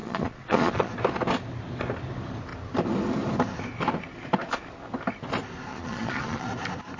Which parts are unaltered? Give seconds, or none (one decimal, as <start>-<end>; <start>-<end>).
0.9-5.7; 6.5-7.0